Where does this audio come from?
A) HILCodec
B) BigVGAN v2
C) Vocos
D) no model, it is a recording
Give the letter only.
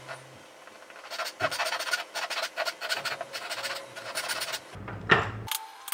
D